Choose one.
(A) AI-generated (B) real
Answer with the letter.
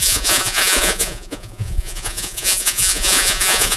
A